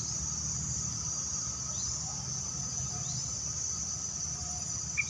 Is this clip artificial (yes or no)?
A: no